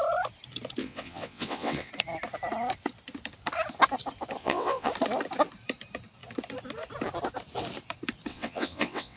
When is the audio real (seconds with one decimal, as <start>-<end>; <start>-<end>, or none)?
0.0-0.8; 1.9-4.4; 4.9-8.3